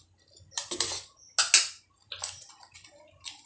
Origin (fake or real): real